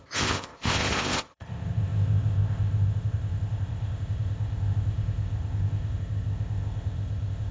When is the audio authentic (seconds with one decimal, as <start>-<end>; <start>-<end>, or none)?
none